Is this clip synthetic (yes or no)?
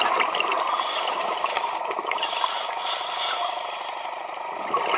no